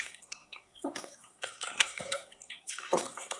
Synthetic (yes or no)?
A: yes